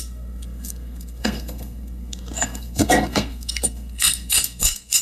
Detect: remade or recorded remade